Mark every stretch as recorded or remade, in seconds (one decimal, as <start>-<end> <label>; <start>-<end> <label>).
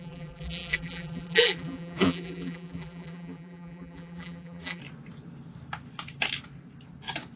0.0-4.8 remade; 4.8-7.4 recorded